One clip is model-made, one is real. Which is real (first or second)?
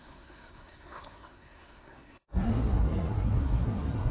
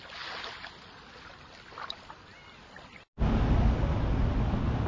second